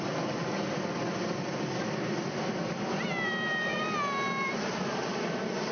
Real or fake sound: real